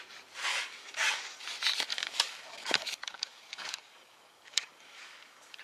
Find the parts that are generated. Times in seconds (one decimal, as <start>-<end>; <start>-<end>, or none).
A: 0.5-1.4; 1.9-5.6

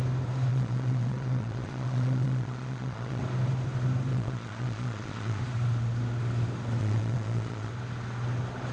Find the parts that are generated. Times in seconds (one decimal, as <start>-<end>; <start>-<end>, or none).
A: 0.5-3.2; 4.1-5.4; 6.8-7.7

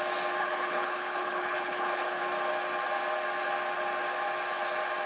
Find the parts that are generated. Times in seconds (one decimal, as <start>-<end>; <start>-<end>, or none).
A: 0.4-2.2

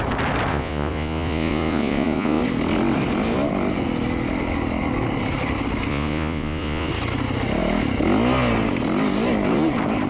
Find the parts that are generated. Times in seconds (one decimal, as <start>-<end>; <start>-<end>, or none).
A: 0.5-2.4; 5.9-6.9

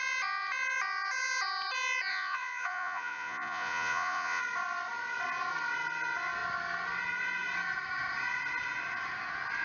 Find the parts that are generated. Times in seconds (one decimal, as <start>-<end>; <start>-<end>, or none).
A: 2.1-4.4